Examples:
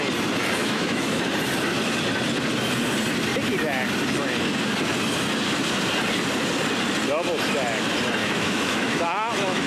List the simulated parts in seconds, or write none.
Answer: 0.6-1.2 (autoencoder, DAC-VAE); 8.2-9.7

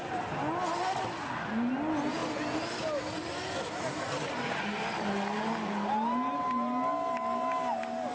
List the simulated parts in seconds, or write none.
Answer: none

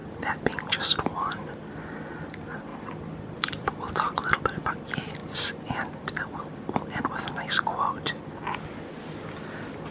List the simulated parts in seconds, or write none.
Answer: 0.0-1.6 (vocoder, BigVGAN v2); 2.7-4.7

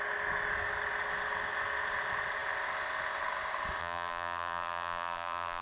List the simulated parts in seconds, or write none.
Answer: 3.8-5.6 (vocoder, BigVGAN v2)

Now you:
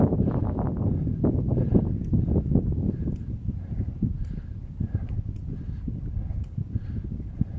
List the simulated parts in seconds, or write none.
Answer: none